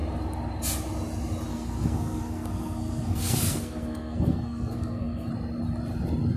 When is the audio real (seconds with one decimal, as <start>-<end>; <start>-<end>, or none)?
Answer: 0.0-1.5; 5.3-6.4